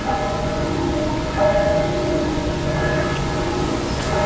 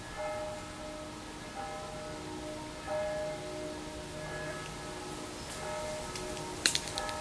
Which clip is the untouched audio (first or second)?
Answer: second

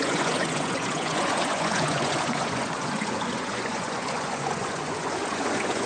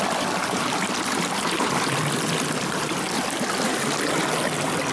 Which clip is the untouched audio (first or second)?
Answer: second